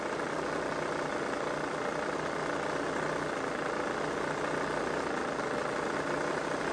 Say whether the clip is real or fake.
real